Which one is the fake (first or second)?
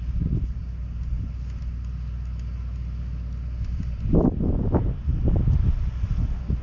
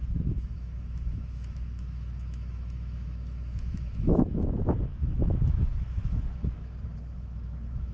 second